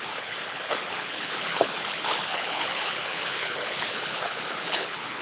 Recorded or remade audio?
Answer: remade